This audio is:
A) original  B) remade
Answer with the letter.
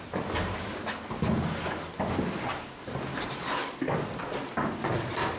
A